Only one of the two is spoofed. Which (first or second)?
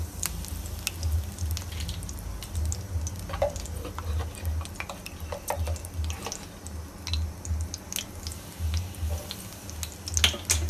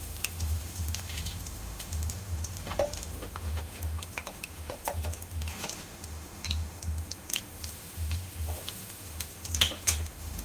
second